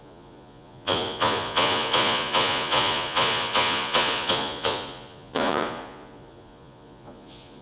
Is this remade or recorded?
remade